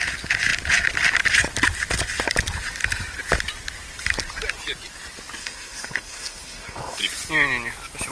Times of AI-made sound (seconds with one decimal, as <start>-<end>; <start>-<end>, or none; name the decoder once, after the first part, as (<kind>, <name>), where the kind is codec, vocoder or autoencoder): 5.4-7.0 (codec, SNAC)